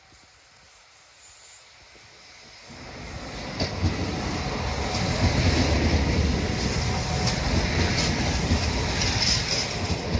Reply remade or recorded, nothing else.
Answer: recorded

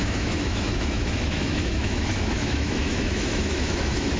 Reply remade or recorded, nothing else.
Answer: remade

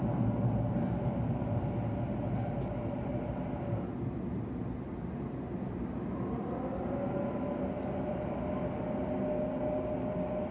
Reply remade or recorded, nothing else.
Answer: recorded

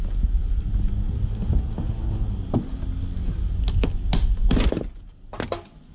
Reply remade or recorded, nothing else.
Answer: recorded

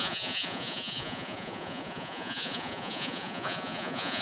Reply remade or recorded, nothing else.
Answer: remade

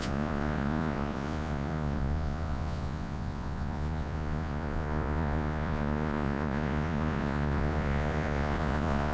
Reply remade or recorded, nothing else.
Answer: remade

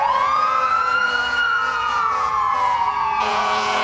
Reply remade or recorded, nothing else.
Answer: remade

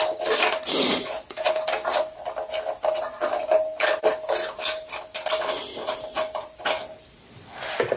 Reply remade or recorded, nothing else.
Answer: recorded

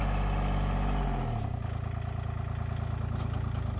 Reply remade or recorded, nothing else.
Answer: recorded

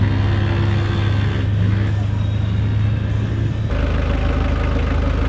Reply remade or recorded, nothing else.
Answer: recorded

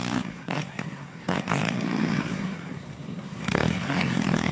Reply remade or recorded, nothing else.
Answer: remade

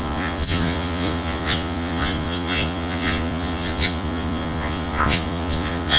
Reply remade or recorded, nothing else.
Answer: remade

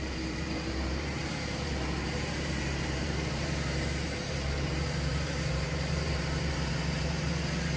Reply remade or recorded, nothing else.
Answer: remade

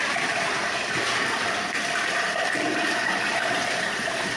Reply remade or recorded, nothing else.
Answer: recorded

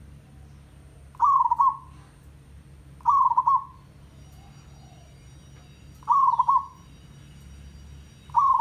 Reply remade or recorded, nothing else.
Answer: recorded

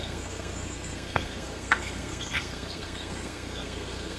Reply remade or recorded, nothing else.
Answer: remade